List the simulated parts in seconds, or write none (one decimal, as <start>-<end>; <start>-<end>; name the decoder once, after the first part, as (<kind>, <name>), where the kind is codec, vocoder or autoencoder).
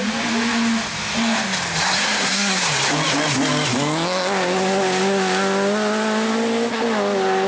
2.0-2.7 (codec, SNAC)